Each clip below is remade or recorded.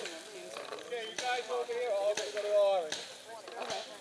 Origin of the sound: recorded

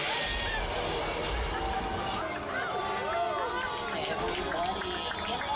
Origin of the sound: recorded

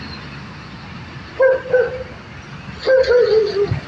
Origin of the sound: recorded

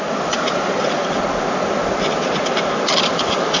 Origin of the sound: recorded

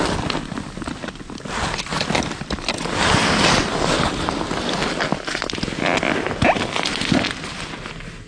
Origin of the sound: recorded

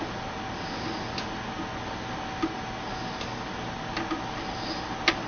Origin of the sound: recorded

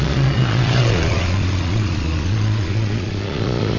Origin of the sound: remade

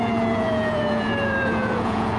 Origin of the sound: remade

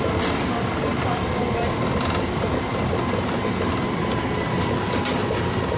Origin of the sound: recorded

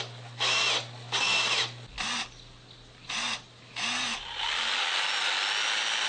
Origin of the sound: recorded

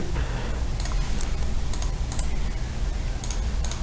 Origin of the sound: recorded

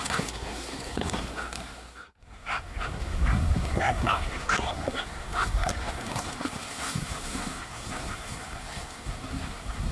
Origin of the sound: remade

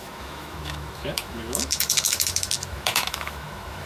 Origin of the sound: remade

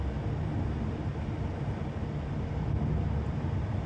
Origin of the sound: recorded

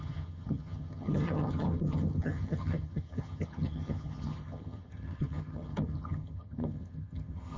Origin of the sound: remade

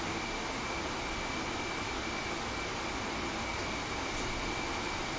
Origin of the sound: recorded